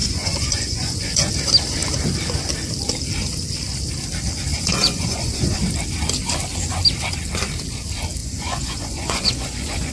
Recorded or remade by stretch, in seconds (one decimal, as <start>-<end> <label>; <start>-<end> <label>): 0.0-1.3 remade; 1.3-4.5 recorded; 4.5-5.6 remade; 5.6-8.2 recorded; 8.2-9.9 remade